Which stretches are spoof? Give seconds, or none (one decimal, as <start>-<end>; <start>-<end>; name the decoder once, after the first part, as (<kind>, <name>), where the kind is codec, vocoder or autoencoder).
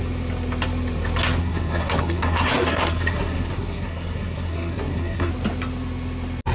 1.4-5.3 (codec, SNAC)